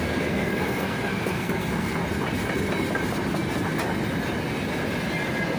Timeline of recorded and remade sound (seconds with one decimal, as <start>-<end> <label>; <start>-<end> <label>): 0.0-2.0 remade; 2.0-5.6 recorded

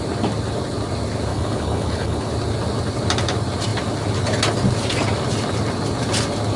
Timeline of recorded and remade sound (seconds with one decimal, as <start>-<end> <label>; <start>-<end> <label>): 0.0-1.3 recorded; 1.3-2.3 remade; 2.3-6.6 recorded

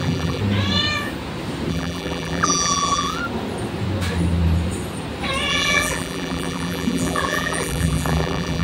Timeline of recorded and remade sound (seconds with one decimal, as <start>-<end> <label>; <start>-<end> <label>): 0.0-0.4 remade; 0.4-1.7 recorded; 1.7-3.2 remade; 3.2-5.5 recorded; 5.5-8.6 remade

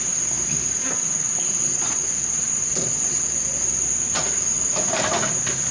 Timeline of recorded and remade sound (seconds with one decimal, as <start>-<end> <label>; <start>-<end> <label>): 0.0-1.6 recorded; 1.6-3.6 remade; 3.6-5.7 recorded

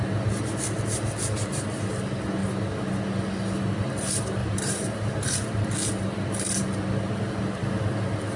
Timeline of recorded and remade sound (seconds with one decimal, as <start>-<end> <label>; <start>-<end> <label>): 0.0-4.4 recorded; 4.4-5.5 remade; 5.5-7.6 recorded; 7.6-8.4 remade

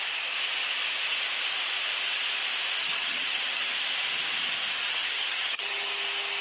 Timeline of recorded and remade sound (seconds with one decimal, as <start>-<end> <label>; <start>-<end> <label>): 0.0-2.8 recorded; 2.8-3.7 remade; 3.7-5.0 recorded; 5.0-5.9 remade; 5.9-6.4 recorded